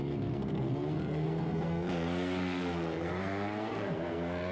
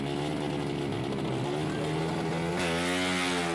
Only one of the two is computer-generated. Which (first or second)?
first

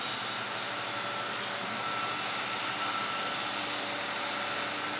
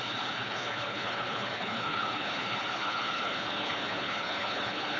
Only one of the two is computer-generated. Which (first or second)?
second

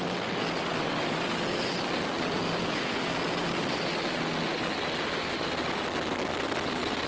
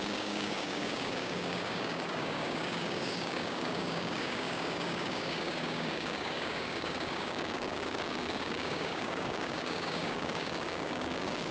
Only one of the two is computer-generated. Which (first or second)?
second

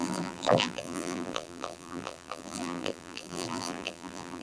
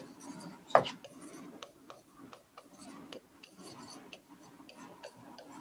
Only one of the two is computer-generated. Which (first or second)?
first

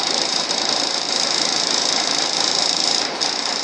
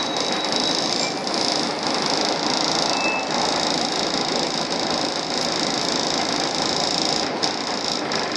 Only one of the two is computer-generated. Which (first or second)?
first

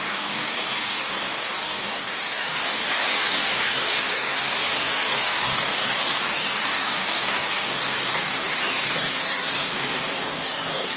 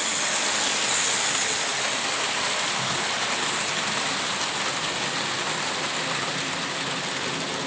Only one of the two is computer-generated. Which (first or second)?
first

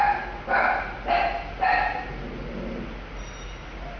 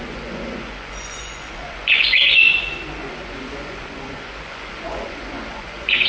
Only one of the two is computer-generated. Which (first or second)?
second